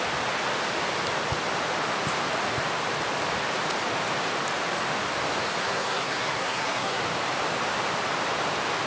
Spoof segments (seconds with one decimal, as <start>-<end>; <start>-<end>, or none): 5.6-7.0